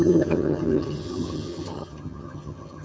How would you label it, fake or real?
fake